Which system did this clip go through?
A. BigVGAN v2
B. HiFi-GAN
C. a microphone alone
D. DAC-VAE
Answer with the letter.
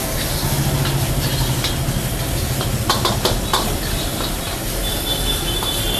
C